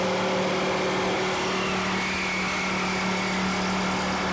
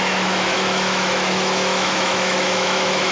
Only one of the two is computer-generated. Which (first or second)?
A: second